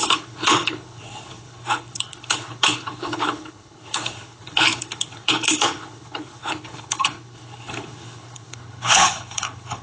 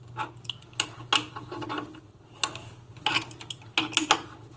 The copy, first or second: first